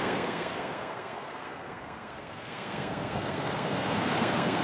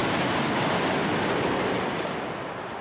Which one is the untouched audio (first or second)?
second